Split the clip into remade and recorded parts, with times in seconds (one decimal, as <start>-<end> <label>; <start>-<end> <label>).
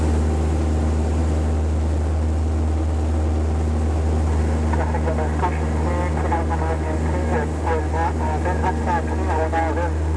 0.0-10.2 recorded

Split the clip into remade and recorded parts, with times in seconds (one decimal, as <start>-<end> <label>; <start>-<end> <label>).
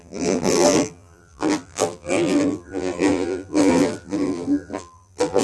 0.0-5.4 remade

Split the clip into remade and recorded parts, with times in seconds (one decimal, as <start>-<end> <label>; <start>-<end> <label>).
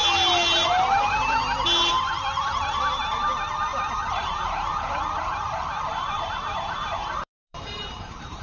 0.0-3.7 recorded; 3.7-8.4 remade